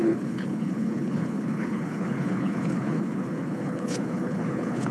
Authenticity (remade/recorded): remade